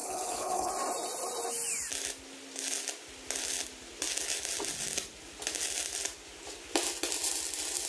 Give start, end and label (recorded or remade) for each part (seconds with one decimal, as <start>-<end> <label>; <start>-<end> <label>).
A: 0.0-0.7 remade; 0.7-7.9 recorded